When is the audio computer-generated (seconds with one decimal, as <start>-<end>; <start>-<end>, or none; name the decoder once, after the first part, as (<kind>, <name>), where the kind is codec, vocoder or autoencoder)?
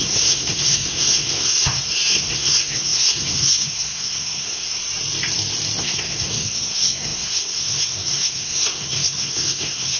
0.0-4.8 (codec, SNAC); 5.8-10.0